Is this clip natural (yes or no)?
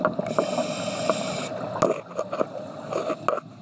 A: yes